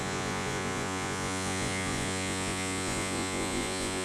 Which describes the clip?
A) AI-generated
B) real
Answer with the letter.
A